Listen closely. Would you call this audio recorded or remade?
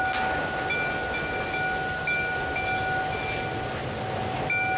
recorded